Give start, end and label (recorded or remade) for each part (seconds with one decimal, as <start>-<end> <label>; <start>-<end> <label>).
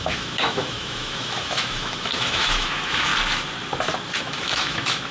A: 0.0-3.1 remade; 3.1-4.2 recorded; 4.2-5.1 remade